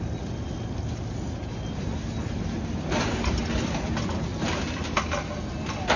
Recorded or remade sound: recorded